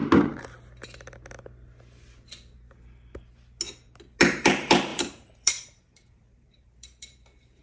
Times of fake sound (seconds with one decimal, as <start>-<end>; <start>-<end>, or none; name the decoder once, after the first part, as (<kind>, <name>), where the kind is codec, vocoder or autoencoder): 4.2-7.6 (vocoder, BigVGAN v2)